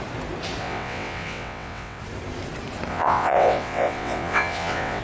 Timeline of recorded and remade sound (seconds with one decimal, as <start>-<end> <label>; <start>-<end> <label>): 0.0-0.6 recorded; 0.6-2.0 remade; 2.0-2.9 recorded; 2.9-5.0 remade